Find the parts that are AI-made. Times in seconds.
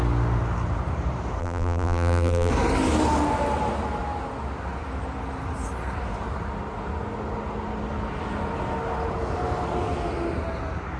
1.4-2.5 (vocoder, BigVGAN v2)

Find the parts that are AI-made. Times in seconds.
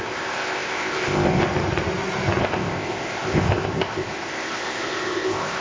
0.0-1.4 (codec, ZipCodec); 2.4-5.6